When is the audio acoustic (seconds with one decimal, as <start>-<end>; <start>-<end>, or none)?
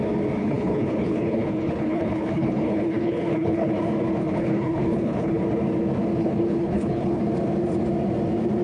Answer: 0.0-0.4; 3.7-4.2; 5.4-6.2; 7.2-8.6